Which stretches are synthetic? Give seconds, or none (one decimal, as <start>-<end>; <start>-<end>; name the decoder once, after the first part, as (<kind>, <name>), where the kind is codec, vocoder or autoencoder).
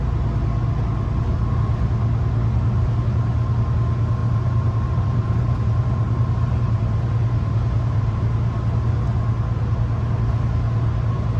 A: 4.2-8.2 (vocoder, BigVGAN v2)